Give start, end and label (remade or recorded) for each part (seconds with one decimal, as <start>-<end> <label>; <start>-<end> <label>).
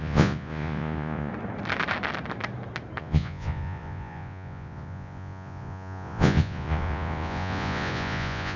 0.0-1.3 remade; 1.3-3.0 recorded; 3.0-8.6 remade